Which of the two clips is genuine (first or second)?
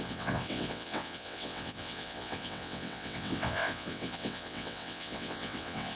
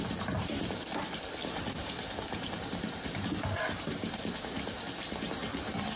second